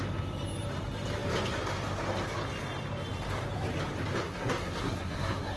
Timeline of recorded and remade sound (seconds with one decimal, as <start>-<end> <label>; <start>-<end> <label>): 0.0-4.2 recorded; 4.2-5.6 remade